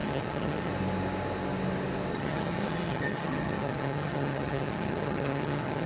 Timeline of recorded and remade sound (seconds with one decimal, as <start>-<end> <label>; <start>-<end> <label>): 0.0-0.7 remade; 0.7-2.1 recorded; 2.1-5.9 remade